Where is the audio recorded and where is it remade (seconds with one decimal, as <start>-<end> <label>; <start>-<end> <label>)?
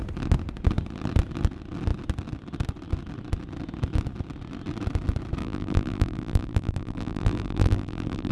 0.0-5.4 recorded; 5.4-8.3 remade